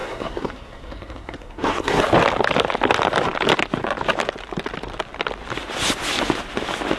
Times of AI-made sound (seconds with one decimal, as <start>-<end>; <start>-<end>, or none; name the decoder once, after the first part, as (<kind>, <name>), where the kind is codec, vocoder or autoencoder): 0.0-2.0 (codec, SNAC)